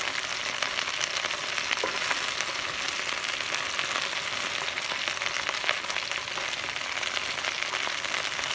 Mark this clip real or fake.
real